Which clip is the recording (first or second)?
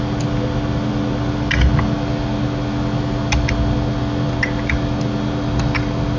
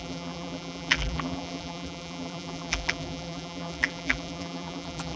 first